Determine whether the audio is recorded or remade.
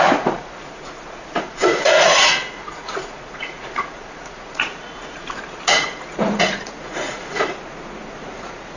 remade